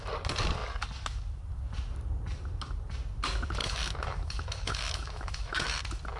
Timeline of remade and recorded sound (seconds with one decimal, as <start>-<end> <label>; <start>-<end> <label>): 0.0-3.6 recorded; 3.6-5.8 remade; 5.8-6.2 recorded